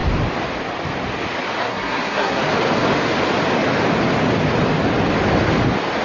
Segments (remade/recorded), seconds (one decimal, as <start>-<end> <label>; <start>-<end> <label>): 0.0-1.6 recorded; 1.6-2.4 remade; 2.4-6.0 recorded